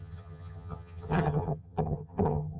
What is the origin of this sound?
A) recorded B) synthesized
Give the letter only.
B